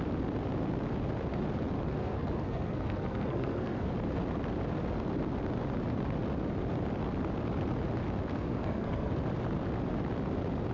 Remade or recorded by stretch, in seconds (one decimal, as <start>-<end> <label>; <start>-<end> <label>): 0.0-2.0 recorded; 2.0-3.9 remade; 3.9-8.3 recorded; 8.3-9.2 remade; 9.2-10.7 recorded